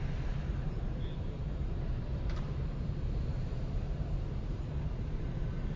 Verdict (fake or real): fake